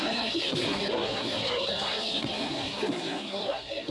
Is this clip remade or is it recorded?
remade